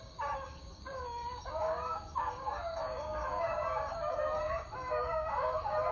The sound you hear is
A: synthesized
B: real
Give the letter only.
A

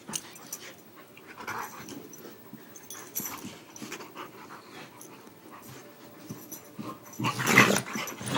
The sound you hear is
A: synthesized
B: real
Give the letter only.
B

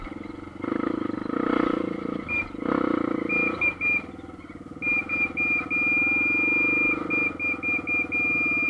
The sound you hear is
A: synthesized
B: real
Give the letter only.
B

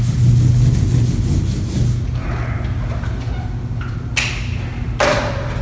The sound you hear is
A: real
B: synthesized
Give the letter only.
A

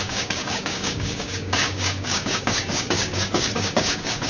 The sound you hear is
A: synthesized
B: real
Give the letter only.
A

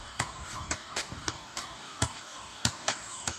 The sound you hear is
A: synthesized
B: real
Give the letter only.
A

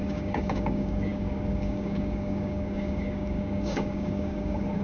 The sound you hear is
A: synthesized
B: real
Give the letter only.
A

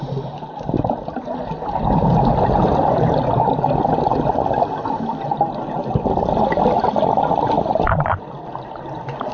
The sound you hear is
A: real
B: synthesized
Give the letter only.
A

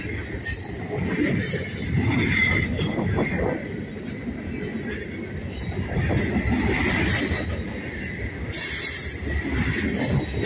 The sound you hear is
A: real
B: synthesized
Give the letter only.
A